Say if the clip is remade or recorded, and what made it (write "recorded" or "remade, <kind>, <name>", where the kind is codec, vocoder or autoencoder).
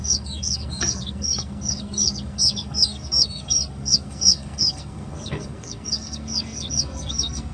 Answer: remade, codec, SNAC